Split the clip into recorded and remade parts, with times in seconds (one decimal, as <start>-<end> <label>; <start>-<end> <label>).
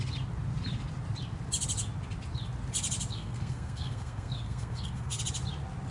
0.0-3.1 recorded; 3.1-5.2 remade; 5.2-5.9 recorded